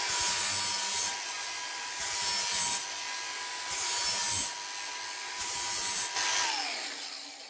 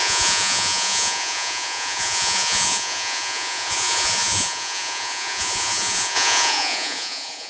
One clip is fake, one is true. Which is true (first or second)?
first